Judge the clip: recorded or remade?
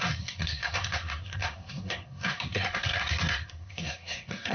remade